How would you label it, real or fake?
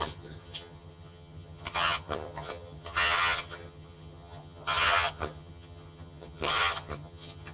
fake